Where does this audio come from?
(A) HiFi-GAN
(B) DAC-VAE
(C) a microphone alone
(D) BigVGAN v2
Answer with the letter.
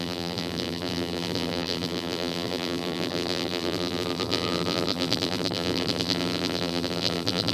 D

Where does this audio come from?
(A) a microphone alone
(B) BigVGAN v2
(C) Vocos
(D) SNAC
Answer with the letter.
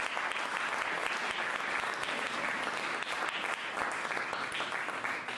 A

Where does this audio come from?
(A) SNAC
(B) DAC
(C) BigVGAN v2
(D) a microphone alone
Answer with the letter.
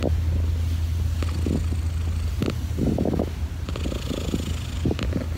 D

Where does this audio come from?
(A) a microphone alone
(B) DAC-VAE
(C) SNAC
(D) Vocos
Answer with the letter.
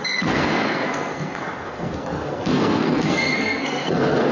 C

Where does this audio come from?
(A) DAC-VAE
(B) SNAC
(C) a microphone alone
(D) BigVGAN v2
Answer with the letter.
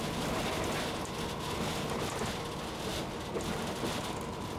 C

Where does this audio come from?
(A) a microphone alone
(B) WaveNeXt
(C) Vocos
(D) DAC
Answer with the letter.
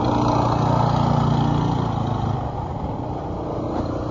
A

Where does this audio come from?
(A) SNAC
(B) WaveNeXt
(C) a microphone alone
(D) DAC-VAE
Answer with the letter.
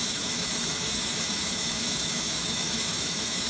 D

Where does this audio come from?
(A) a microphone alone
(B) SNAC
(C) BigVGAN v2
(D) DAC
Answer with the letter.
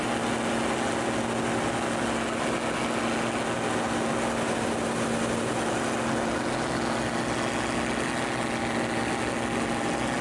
A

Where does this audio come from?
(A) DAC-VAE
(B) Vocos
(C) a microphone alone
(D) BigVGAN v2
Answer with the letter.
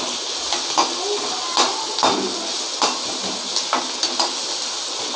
C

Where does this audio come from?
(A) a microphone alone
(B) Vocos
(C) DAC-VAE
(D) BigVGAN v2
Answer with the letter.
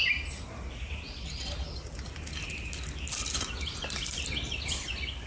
A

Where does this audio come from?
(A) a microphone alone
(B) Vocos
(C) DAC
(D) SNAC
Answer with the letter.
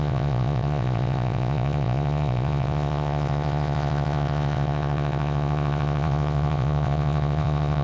B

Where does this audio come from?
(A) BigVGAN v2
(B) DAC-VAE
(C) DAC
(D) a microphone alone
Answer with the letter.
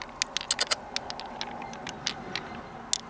D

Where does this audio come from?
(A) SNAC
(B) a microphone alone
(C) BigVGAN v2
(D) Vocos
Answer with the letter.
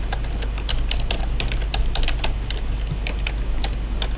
B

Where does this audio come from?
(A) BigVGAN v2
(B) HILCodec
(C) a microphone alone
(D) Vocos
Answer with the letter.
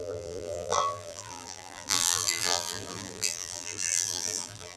A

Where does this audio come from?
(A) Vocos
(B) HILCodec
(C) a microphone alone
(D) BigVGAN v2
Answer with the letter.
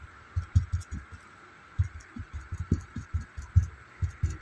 C